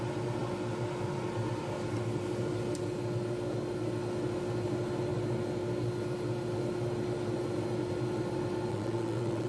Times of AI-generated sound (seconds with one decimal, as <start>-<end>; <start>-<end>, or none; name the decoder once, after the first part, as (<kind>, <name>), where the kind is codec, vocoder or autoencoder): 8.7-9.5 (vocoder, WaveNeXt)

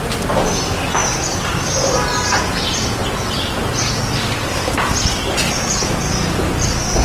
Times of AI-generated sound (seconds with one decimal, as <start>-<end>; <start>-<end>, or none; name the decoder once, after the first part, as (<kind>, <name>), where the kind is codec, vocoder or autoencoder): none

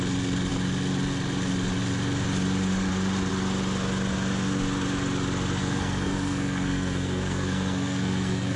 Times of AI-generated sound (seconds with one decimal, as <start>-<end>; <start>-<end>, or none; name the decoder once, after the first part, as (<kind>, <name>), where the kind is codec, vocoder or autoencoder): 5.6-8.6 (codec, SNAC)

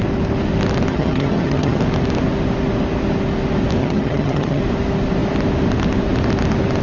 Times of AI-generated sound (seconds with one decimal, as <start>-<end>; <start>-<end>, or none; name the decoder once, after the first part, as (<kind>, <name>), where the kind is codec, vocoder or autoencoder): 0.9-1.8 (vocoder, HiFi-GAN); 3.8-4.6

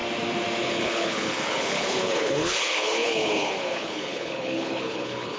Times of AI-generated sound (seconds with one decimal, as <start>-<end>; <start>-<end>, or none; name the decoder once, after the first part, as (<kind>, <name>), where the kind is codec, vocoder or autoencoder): 0.6-5.4 (codec, HILCodec)